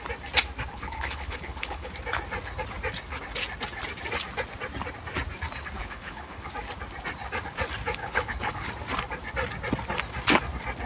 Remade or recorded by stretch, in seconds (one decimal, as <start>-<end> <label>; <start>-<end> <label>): 0.0-0.7 recorded; 0.7-1.9 remade; 1.9-5.8 recorded; 5.8-6.5 remade; 6.5-8.0 recorded; 8.0-8.7 remade; 8.7-10.9 recorded